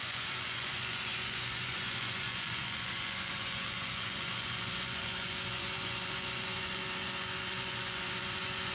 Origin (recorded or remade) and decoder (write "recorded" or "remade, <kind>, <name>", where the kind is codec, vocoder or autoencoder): remade, vocoder, Vocos